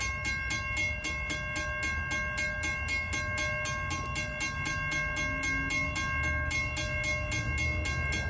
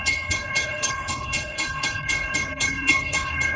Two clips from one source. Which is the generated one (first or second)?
second